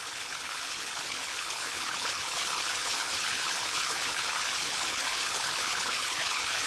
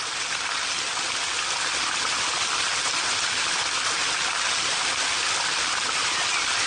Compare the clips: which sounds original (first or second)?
second